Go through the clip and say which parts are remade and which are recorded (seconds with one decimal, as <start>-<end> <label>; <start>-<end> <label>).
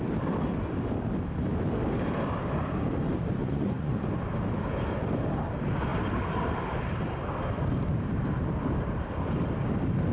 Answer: 0.0-3.4 recorded; 3.4-4.1 remade; 4.1-10.1 recorded